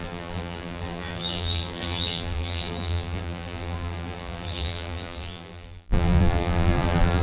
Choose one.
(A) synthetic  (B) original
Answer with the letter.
A